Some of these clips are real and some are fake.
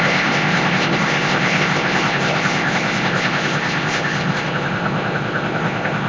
fake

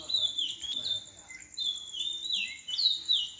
real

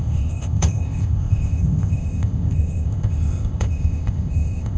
fake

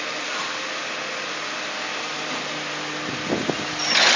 real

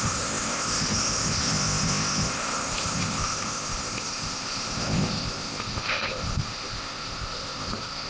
fake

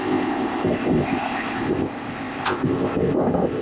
fake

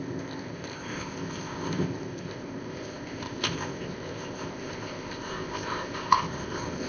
fake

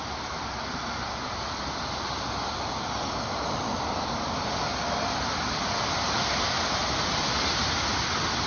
real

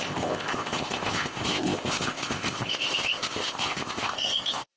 fake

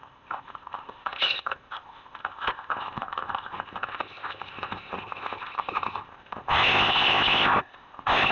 fake